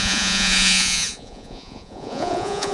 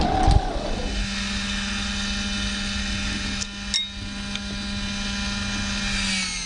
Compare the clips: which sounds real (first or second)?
second